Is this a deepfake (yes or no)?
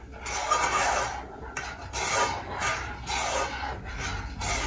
no